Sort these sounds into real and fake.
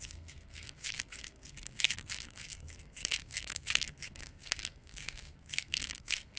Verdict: fake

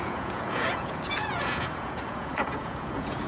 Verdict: fake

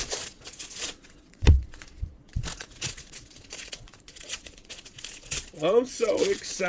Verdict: fake